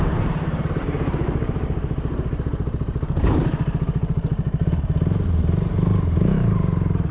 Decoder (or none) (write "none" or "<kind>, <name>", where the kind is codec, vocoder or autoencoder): vocoder, BigVGAN v2